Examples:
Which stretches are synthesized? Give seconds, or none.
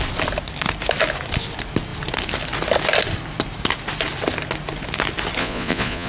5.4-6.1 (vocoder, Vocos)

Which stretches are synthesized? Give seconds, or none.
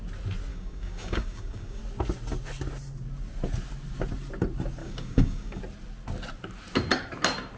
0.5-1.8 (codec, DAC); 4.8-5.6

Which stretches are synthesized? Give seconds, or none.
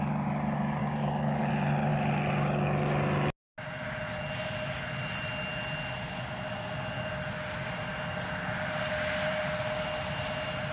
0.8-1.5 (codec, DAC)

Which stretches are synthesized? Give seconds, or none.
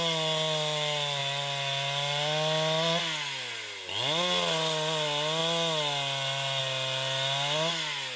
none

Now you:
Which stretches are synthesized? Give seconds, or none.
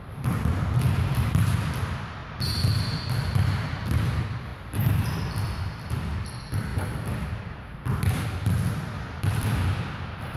0.0-2.2 (vocoder, BigVGAN v2); 3.2-4.5; 5.2-10.4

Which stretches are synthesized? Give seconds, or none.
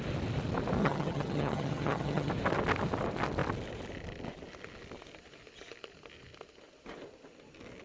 0.8-2.3 (vocoder, HiFi-GAN)